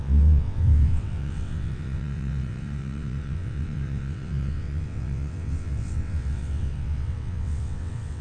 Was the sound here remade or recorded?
remade